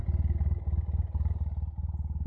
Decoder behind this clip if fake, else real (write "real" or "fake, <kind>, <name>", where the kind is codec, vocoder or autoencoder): real